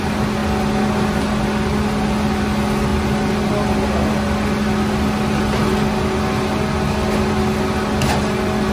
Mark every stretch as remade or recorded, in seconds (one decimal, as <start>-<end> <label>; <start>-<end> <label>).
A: 0.0-8.7 recorded